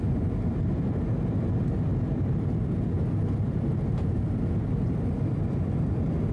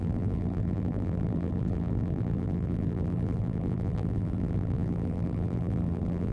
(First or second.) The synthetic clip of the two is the second